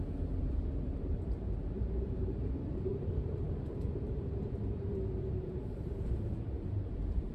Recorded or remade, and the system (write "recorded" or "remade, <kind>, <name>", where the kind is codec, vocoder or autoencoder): remade, vocoder, BigVGAN v2